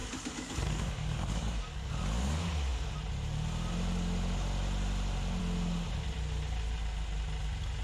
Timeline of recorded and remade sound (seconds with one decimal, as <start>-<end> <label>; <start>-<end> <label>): 0.0-1.9 remade; 1.9-7.8 recorded

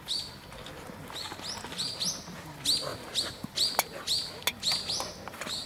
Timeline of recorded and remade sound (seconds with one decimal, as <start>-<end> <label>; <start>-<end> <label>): 0.0-5.7 recorded

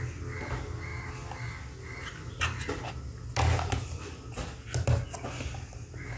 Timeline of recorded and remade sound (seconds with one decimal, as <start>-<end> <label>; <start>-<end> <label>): 0.0-6.2 recorded